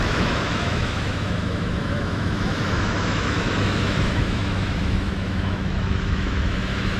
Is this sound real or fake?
fake